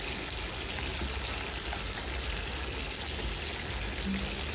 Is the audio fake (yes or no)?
no